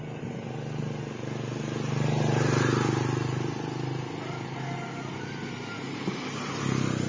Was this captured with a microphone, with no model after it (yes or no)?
yes